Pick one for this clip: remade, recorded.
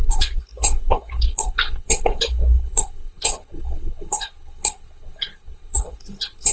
remade